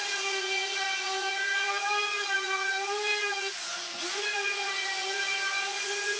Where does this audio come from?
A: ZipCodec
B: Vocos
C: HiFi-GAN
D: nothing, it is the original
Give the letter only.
B